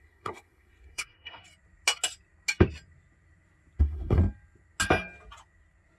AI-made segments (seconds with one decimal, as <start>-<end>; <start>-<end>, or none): 0.0-1.4; 3.8-4.2